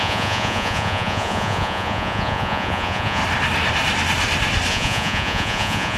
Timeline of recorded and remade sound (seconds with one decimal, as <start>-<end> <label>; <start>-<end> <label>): 0.0-3.2 remade; 3.2-4.7 recorded; 4.7-6.0 remade